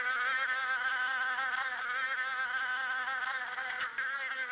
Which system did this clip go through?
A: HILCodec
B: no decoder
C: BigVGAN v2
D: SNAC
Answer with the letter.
B